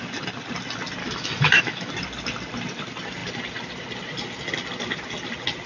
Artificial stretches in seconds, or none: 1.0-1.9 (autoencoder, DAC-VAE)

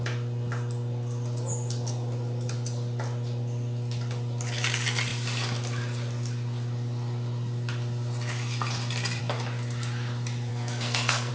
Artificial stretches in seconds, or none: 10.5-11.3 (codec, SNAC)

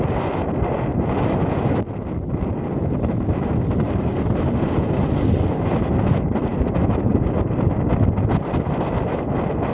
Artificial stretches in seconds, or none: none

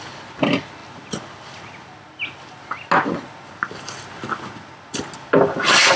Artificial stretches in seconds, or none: none

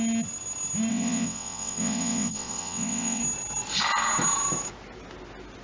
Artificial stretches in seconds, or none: 0.9-3.2 (vocoder, WaveNeXt)

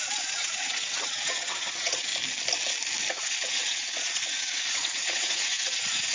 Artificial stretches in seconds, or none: 0.0-2.1 (vocoder, WaveNeXt); 3.1-6.1